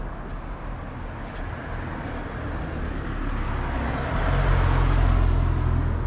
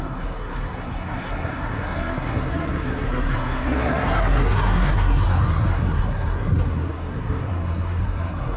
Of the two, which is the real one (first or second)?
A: first